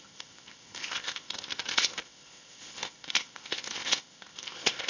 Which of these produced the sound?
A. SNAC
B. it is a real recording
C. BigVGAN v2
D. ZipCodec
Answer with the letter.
D